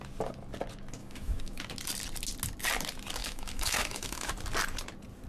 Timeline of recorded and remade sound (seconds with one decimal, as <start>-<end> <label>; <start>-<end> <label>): 0.0-1.0 recorded; 1.0-1.6 remade; 1.6-3.2 recorded; 3.2-4.3 remade; 4.3-5.3 recorded